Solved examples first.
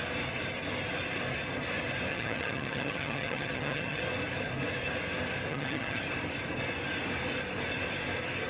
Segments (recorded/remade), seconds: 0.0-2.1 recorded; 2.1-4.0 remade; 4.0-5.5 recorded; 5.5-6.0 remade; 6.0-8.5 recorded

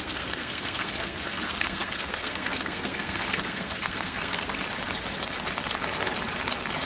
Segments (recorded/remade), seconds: 0.0-4.5 remade; 4.5-6.9 recorded

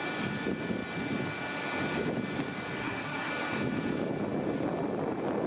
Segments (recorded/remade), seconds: 0.0-2.8 recorded; 2.8-3.3 remade; 3.3-5.5 recorded

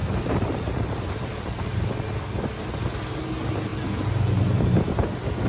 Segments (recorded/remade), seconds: 0.0-1.9 remade; 1.9-5.5 recorded

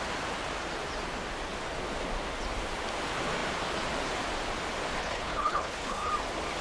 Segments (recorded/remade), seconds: 0.0-5.0 recorded; 5.0-6.1 remade; 6.1-6.6 recorded

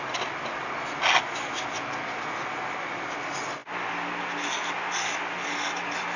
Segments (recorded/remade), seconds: 0.0-6.2 recorded

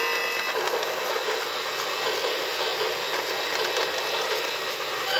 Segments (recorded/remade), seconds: 0.0-5.2 recorded